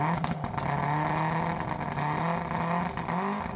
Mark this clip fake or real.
real